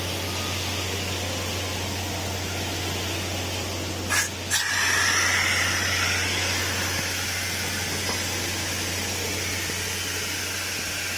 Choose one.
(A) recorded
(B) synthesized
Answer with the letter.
A